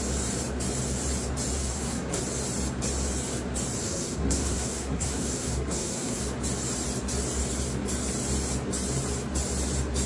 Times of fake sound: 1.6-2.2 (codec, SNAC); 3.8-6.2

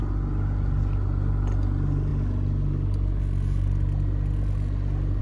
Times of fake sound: none

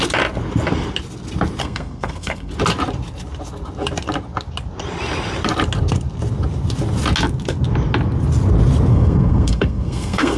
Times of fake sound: 1.6-2.5 (codec, SNAC); 8.9-10.4

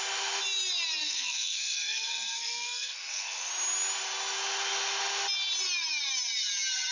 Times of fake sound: 1.0-3.5 (codec, SNAC)